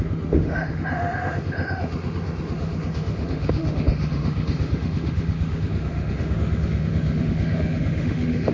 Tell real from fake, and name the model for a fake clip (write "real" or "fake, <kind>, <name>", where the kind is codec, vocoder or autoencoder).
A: fake, autoencoder, DAC-VAE